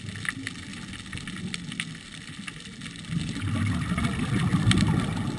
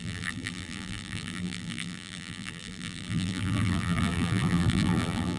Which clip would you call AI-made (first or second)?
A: second